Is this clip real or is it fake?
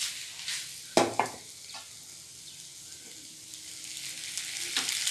real